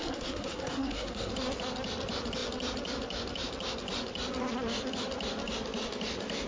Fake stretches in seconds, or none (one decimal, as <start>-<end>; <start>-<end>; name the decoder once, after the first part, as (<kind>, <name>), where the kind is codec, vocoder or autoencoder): 0.0-1.3 (codec, SNAC)